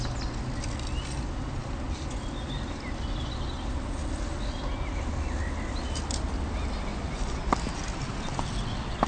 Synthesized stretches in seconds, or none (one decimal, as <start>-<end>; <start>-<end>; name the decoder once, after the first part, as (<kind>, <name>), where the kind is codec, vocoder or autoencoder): 6.9-7.5 (vocoder, Vocos)